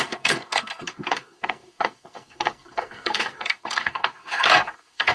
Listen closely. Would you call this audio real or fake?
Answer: fake